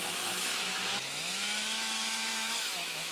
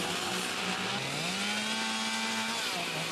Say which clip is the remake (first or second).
first